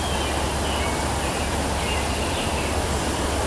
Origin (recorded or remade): recorded